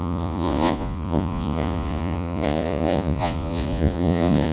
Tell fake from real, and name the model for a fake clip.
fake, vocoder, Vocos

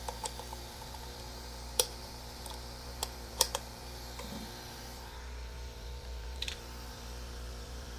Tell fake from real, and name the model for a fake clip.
fake, vocoder, BigVGAN v2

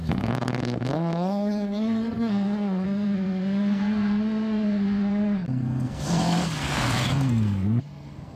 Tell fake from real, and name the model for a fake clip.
fake, codec, SNAC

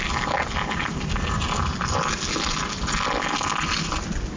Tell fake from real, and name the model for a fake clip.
real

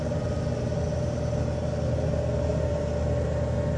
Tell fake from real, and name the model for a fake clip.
real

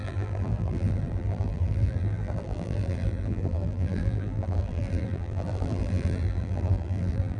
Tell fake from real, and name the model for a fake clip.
fake, vocoder, BigVGAN v2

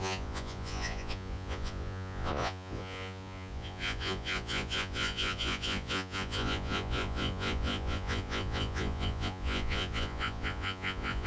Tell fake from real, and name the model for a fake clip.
fake, vocoder, Vocos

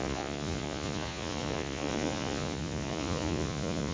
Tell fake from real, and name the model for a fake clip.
fake, vocoder, Vocos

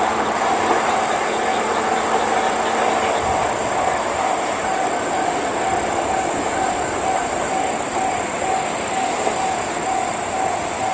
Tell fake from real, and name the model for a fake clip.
real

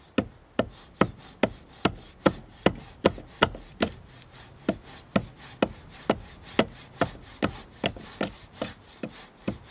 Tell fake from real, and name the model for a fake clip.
real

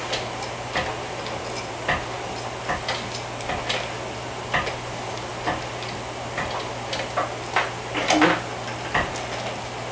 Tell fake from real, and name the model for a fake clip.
real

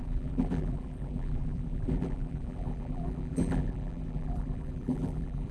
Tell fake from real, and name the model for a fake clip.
fake, vocoder, BigVGAN v2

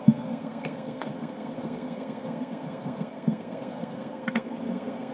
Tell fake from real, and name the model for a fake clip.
fake, codec, SNAC